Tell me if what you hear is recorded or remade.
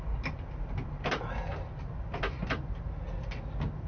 recorded